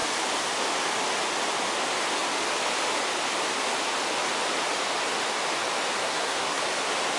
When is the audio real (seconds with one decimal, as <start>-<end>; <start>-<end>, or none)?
0.0-6.0; 6.6-7.2